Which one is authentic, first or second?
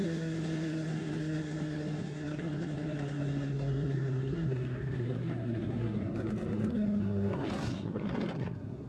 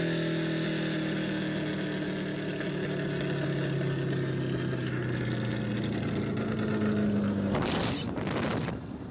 second